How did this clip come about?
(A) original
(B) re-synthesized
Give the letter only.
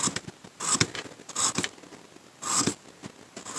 A